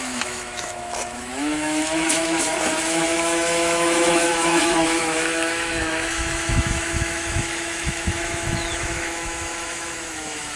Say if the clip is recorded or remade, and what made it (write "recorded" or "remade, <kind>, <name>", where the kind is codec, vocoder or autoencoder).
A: remade, autoencoder, DAC-VAE